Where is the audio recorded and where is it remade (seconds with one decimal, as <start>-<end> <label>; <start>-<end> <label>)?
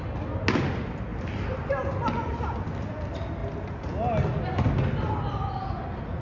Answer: 0.0-6.2 recorded